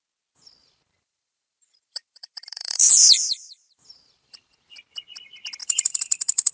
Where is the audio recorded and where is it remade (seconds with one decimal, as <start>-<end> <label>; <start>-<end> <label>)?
0.0-0.6 recorded; 0.6-4.5 remade; 4.5-5.6 recorded; 5.6-6.5 remade